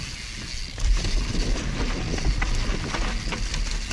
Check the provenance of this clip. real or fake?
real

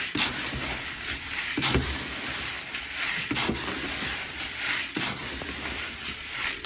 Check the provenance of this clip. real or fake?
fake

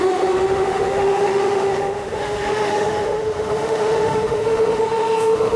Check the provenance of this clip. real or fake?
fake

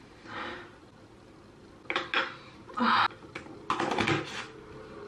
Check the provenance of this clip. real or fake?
real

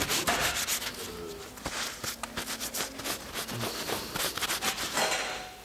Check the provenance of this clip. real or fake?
real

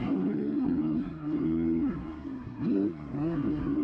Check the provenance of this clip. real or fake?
fake